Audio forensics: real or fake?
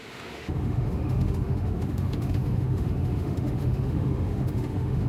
fake